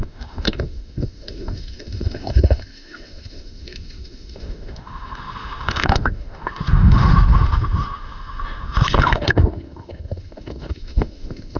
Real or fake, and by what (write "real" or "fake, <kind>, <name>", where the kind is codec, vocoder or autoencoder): fake, autoencoder, DAC-VAE